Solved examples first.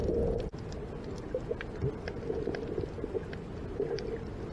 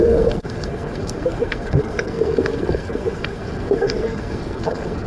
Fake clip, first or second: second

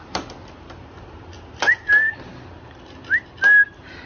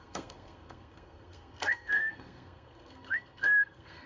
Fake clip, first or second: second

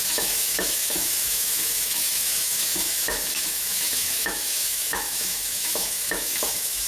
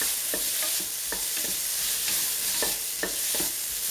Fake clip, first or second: first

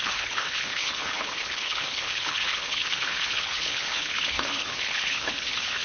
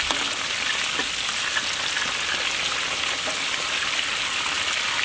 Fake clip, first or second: first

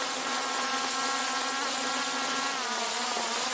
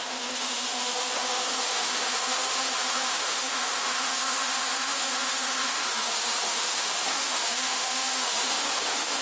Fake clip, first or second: second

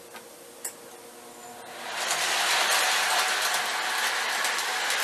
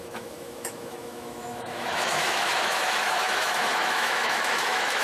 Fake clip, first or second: second